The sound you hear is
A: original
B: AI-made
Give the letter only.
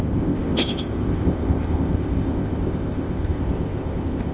B